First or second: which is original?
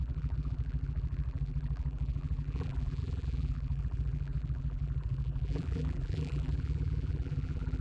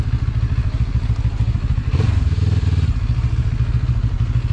second